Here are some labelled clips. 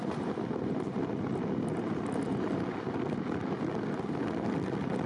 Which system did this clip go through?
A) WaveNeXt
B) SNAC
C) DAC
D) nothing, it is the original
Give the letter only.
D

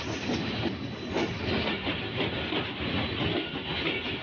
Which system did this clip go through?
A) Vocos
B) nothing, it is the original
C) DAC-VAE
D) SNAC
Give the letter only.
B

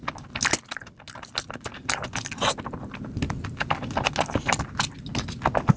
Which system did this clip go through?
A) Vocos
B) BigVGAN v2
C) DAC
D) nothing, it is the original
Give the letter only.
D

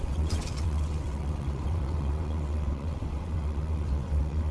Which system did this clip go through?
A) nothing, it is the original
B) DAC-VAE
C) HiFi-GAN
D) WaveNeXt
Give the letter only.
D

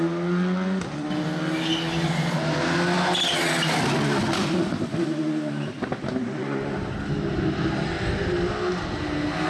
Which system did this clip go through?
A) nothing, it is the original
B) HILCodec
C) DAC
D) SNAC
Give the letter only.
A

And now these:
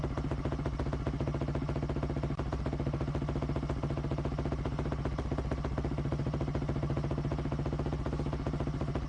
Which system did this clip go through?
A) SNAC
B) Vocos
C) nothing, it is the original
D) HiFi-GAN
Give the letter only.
C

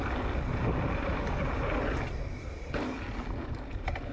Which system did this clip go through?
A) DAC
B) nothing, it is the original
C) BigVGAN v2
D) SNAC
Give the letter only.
B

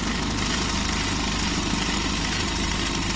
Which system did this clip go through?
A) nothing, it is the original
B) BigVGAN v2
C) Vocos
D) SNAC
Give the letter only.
A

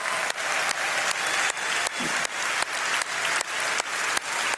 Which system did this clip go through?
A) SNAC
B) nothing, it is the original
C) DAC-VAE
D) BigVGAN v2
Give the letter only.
B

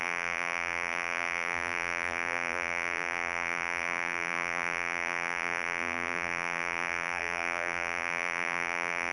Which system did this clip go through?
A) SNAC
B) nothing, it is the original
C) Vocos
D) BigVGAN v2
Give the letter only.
D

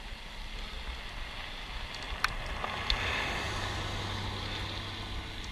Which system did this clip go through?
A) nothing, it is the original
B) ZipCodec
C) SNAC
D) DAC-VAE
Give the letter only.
A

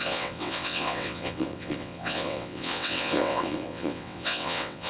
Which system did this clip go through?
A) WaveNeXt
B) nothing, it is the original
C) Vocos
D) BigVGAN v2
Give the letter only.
A